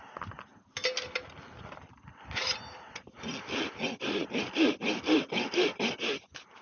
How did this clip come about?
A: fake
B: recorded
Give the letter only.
B